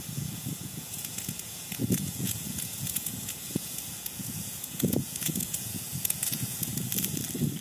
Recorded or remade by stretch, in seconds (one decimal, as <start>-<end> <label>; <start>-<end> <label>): 0.0-6.7 remade; 6.7-7.6 recorded